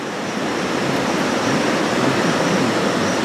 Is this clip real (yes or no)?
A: yes